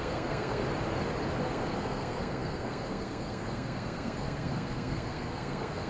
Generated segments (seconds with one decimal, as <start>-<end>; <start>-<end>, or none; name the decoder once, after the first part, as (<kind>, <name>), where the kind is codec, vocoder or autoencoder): 0.0-0.6 (codec, SNAC); 1.4-5.9